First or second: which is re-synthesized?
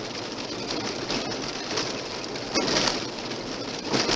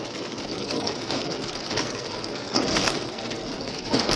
second